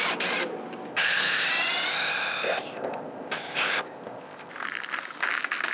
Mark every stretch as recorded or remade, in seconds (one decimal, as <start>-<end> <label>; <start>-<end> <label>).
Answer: 0.0-0.9 recorded; 0.9-1.5 remade; 1.5-1.9 recorded; 1.9-4.5 remade; 4.5-5.7 recorded